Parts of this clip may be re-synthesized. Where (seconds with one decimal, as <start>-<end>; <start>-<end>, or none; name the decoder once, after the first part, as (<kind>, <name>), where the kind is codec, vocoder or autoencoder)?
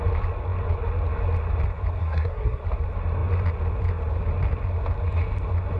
2.0-2.6 (codec, SNAC)